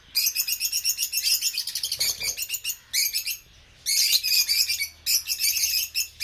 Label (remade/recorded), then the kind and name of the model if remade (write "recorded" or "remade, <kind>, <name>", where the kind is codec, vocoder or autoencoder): recorded